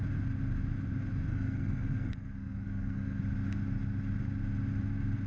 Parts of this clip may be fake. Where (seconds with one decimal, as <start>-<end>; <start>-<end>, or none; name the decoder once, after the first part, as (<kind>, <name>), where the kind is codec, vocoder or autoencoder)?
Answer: 1.3-3.2 (codec, SNAC)